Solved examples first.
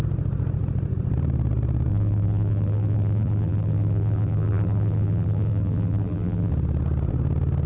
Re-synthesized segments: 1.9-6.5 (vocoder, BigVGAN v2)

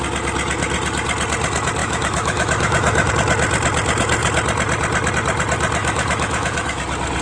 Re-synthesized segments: 1.8-3.1 (autoencoder, DAC-VAE); 5.8-6.8

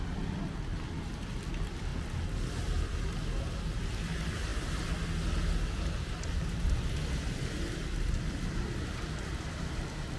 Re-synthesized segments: none

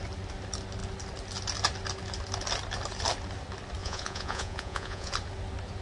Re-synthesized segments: 3.8-5.1 (vocoder, Vocos)